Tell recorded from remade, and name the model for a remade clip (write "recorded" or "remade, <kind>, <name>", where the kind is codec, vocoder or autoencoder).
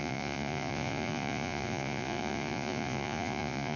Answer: remade, vocoder, Vocos